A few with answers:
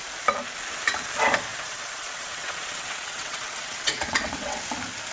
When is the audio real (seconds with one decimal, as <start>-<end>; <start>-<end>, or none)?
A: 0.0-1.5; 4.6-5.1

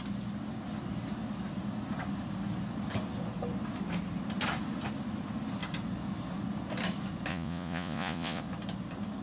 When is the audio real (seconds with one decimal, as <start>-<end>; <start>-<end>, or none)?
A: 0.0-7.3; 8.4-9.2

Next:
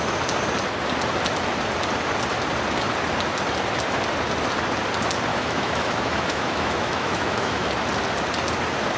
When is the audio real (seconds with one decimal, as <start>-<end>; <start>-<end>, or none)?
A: 0.0-5.3; 7.7-9.0

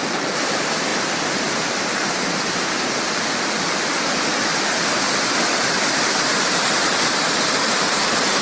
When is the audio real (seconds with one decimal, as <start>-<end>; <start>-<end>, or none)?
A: 0.9-5.8

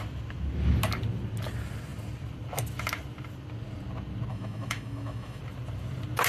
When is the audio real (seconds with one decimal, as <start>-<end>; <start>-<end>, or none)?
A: 0.0-4.3; 5.4-6.3